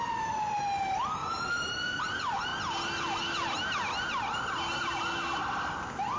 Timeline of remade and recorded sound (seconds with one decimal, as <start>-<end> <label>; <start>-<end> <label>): 0.0-6.2 recorded